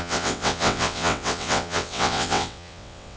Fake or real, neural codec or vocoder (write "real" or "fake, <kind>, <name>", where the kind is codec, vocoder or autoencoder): fake, vocoder, WaveNeXt